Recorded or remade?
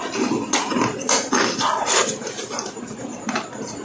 remade